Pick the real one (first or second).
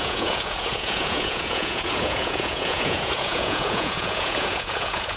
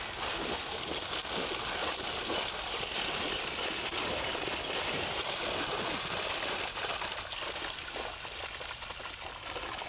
second